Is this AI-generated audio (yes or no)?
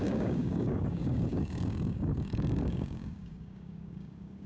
yes